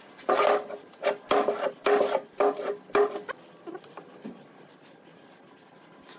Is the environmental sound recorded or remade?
recorded